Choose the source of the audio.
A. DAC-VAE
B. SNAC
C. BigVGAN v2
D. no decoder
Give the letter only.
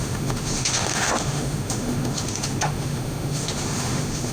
A